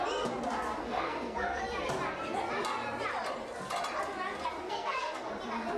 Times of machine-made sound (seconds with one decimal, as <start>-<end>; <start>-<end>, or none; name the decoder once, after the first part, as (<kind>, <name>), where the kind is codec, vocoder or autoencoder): 0.8-1.6 (codec, SNAC); 4.6-5.3